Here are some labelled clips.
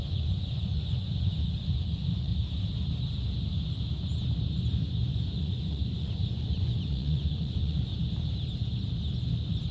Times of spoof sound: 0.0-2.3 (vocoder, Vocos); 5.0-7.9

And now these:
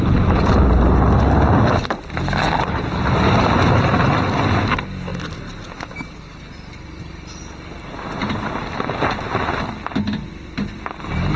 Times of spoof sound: none

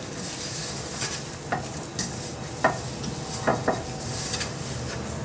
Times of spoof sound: none

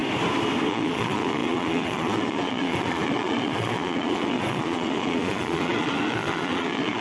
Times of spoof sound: 0.7-7.0 (vocoder, Vocos)

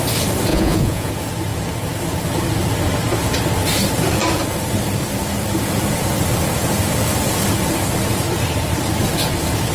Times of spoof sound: 0.5-1.1 (vocoder, Vocos)

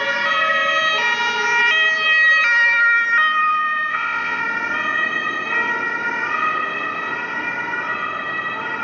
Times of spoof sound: 3.9-4.4 (vocoder, Vocos)

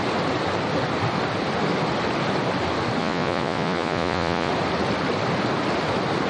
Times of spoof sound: 3.0-4.5 (vocoder, Vocos)

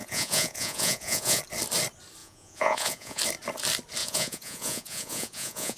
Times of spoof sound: 0.0-1.4 (vocoder, Vocos); 2.2-3.2; 4.0-5.8